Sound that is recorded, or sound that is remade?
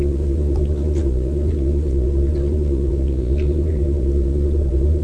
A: remade